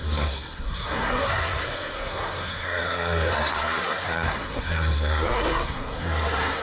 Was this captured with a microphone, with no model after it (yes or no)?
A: no